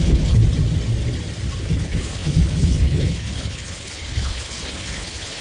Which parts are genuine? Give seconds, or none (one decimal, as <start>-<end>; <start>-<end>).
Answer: 0.4-1.6